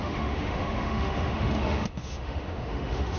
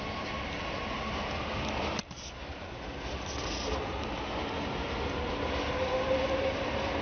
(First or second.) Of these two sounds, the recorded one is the second